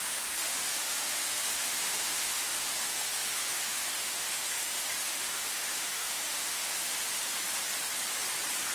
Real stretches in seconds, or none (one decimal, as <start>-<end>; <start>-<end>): 7.0-8.7